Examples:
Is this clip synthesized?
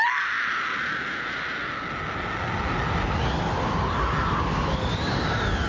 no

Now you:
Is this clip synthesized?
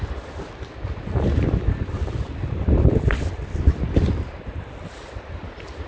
no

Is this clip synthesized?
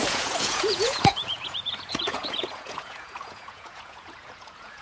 yes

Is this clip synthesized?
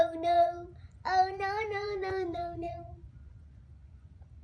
yes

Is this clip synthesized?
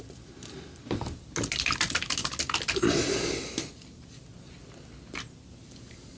no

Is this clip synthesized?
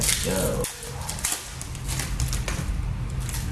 no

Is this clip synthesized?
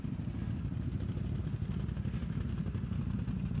no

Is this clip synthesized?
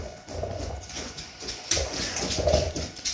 yes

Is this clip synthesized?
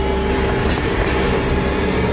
no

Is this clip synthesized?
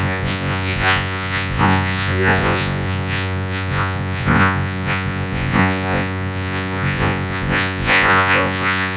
yes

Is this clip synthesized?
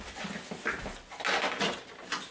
no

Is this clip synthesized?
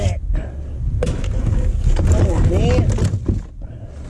no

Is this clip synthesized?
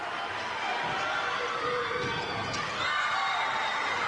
no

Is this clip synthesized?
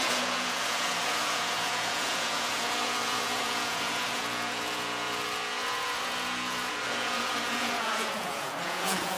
yes